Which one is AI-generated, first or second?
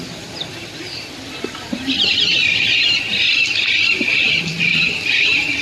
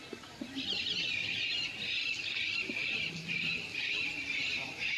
first